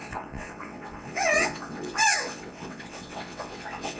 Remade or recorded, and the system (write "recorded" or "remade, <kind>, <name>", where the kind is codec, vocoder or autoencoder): remade, vocoder, WaveNeXt